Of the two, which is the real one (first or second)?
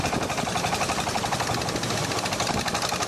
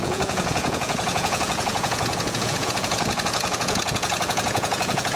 first